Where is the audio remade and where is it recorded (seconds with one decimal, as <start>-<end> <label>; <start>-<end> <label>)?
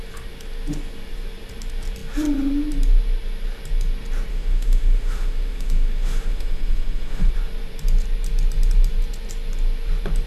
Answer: 0.0-4.3 recorded; 4.3-7.3 remade; 7.3-10.3 recorded